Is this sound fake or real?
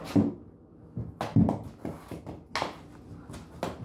real